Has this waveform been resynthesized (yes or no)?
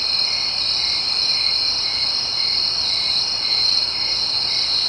no